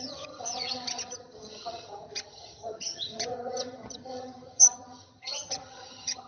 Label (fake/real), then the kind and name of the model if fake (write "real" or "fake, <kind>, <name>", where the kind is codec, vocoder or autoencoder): fake, vocoder, HiFi-GAN